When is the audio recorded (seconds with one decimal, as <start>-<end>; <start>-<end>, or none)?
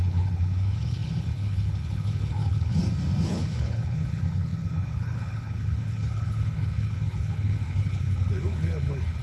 2.8-3.3